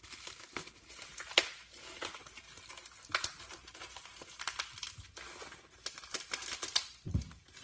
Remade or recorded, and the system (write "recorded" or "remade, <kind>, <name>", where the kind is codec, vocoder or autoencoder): recorded